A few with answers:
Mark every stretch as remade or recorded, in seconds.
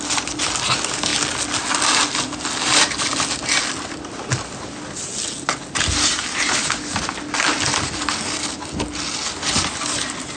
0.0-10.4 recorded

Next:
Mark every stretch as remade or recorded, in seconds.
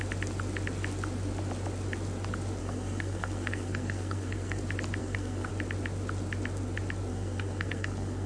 0.0-2.6 recorded; 2.6-4.6 remade; 4.6-5.0 recorded; 5.0-5.5 remade; 5.5-7.1 recorded; 7.1-8.3 remade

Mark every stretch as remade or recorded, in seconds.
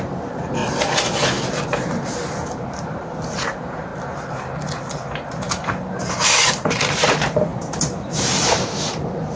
0.0-0.6 remade; 0.6-2.5 recorded; 2.5-3.9 remade; 3.9-6.1 recorded; 6.1-7.5 remade; 7.5-8.1 recorded; 8.1-9.4 remade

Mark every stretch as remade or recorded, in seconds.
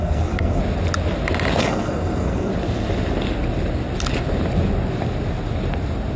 0.0-0.6 remade; 0.6-1.6 recorded; 1.6-2.5 remade; 2.5-6.2 recorded